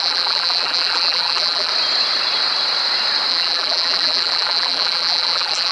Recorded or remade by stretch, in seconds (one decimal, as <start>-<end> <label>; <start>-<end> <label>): 0.0-1.7 remade; 1.7-3.3 recorded; 3.3-5.7 remade